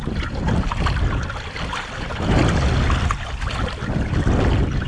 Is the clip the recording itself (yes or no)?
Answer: yes